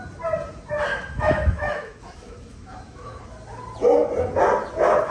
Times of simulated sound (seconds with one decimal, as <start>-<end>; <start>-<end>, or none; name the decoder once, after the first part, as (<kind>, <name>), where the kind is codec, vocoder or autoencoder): 0.9-3.2 (autoencoder, DAC-VAE)